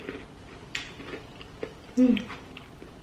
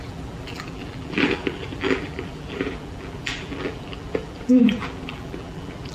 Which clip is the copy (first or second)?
second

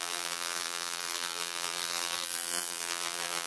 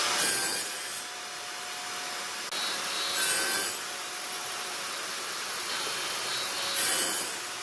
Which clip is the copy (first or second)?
first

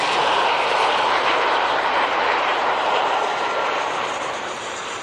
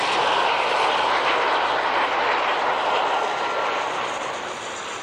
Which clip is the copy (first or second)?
first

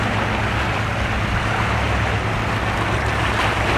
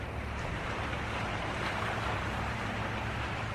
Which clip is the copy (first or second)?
second